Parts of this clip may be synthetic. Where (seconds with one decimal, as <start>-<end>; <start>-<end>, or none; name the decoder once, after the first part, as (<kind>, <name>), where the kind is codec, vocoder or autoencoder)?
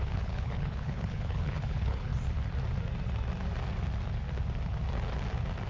0.0-2.1 (codec, HILCodec)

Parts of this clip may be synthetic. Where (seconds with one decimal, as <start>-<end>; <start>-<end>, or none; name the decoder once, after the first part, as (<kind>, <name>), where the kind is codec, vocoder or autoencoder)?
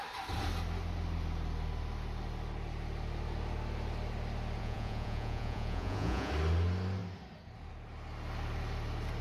4.6-6.3 (vocoder, Vocos)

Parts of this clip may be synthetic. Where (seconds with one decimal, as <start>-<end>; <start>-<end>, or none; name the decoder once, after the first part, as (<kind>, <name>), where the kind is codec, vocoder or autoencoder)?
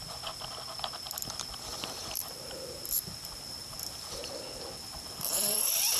0.0-4.2 (vocoder, BigVGAN v2); 4.8-6.0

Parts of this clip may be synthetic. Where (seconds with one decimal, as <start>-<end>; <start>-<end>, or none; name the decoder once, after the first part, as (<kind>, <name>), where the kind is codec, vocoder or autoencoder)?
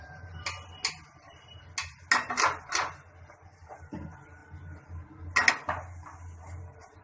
none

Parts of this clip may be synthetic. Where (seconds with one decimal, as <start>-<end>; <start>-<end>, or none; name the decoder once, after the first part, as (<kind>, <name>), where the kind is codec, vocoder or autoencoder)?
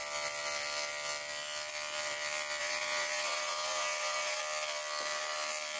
2.6-4.4 (vocoder, BigVGAN v2)